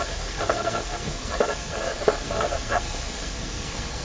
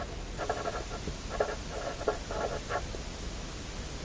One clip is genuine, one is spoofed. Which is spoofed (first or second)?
first